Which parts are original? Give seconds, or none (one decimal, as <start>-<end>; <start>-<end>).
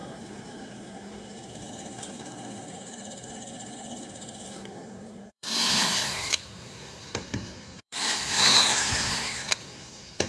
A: none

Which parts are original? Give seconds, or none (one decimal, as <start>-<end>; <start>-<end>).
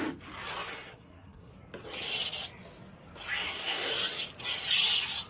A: 0.0-0.7; 1.5-3.4; 3.9-5.3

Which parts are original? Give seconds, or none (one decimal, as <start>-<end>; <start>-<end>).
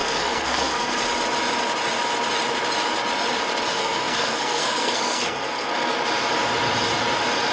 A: 1.0-3.7; 5.7-7.5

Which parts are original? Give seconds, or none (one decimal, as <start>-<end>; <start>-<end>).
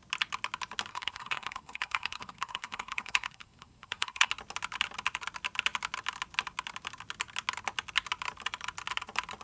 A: 0.0-0.9; 4.3-9.4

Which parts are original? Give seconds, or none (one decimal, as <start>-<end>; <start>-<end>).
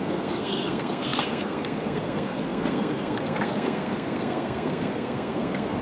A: none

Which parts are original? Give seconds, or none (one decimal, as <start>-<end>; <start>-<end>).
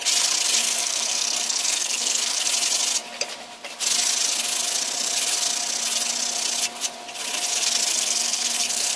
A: 0.0-0.6; 2.5-7.9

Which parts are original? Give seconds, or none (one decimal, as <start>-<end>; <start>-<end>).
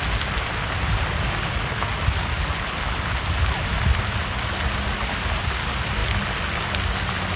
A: 0.0-7.4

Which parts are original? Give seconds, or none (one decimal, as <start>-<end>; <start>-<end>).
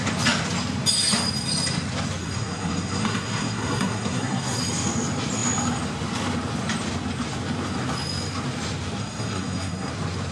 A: 0.0-2.2; 4.6-9.0; 9.9-10.3